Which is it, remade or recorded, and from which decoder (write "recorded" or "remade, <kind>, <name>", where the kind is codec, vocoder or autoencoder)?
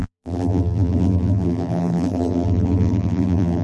remade, vocoder, BigVGAN v2